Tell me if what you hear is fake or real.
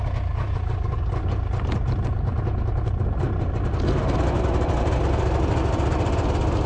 real